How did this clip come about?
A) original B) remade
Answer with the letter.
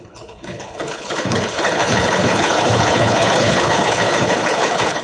B